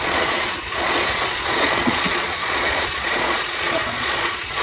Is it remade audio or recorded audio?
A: remade